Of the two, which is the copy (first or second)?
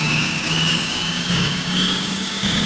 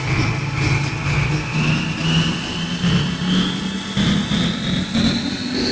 first